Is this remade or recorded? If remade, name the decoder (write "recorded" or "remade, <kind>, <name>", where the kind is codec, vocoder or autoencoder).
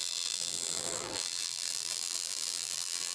remade, vocoder, BigVGAN v2